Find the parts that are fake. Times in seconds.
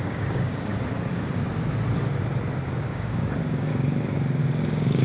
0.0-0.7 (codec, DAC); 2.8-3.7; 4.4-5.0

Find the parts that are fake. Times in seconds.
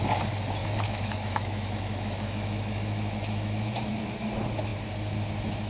0.6-4.0 (autoencoder, DAC-VAE)